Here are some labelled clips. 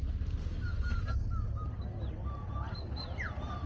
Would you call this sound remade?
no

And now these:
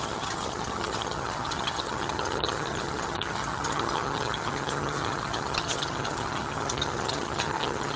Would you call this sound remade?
yes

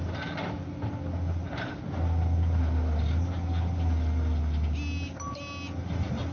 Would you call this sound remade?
no